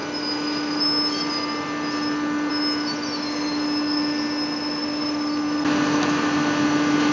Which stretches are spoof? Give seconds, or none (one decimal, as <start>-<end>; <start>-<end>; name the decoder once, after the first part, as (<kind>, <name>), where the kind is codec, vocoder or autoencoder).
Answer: none